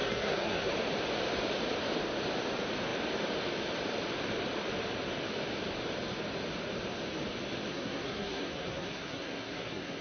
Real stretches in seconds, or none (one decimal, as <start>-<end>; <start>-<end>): 0.7-7.7